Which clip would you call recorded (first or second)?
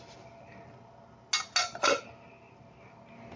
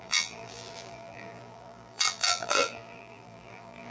first